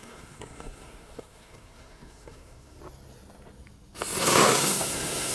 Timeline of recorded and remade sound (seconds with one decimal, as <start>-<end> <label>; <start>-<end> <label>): 0.0-2.8 remade; 2.8-4.2 recorded; 4.2-5.3 remade